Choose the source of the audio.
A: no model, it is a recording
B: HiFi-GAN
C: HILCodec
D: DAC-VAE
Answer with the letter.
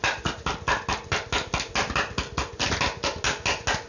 A